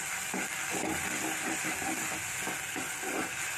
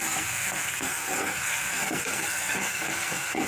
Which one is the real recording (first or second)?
first